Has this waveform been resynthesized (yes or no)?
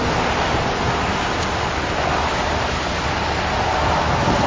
no